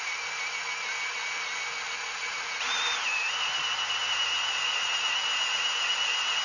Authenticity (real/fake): real